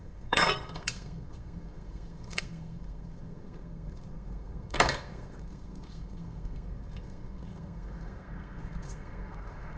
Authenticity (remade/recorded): remade